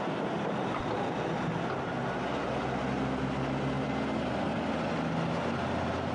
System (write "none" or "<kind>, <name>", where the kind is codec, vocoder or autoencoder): none